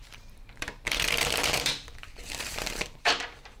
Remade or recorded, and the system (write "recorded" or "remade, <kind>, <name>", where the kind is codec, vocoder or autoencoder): remade, vocoder, BigVGAN v2